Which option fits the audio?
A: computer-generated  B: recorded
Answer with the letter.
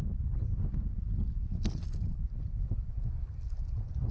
B